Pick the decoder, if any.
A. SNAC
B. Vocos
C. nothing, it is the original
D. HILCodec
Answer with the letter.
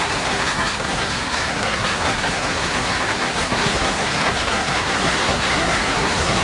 A